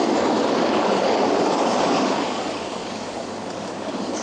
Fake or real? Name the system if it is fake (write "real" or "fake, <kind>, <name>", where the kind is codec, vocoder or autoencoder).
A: fake, codec, DAC